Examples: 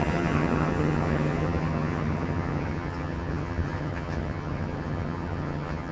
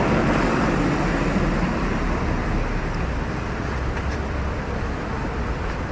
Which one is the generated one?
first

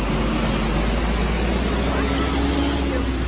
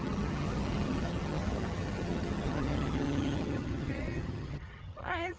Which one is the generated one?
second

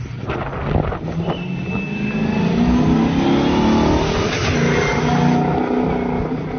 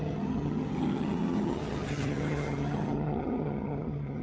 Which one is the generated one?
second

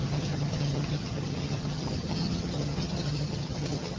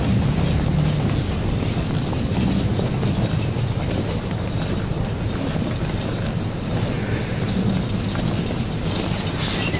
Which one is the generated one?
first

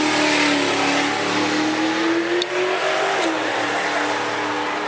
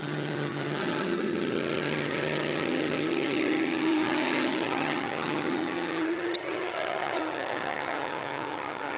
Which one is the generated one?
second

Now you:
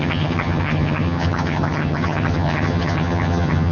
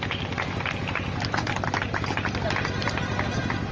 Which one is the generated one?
first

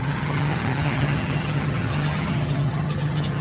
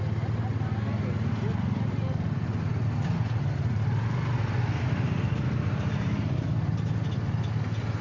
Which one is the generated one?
first